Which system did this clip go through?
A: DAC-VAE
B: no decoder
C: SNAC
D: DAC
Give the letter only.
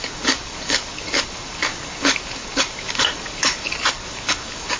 D